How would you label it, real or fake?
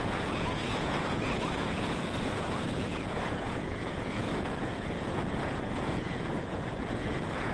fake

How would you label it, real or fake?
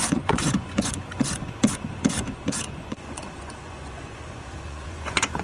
fake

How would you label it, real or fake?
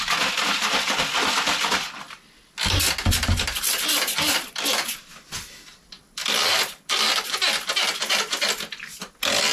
real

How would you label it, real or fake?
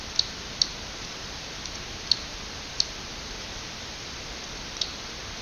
fake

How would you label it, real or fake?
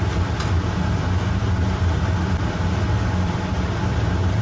fake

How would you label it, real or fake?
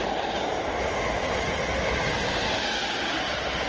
real